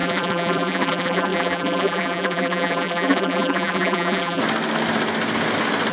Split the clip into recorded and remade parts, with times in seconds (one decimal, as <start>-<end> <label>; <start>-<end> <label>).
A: 0.0-4.4 remade; 4.4-5.9 recorded